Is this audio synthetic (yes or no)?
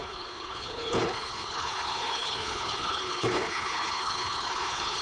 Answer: yes